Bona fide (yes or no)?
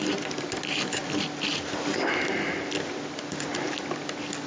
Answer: yes